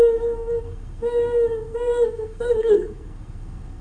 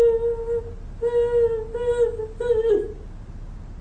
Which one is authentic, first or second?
second